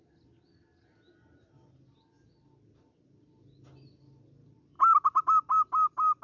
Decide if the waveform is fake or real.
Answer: real